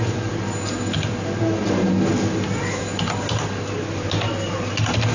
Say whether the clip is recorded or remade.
recorded